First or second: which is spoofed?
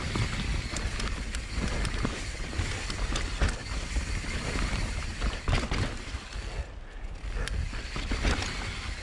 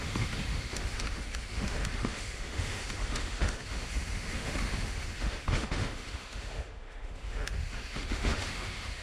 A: second